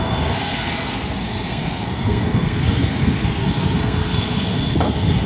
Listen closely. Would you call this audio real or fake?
fake